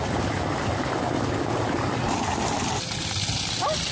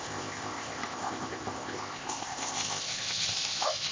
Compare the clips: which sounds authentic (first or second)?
first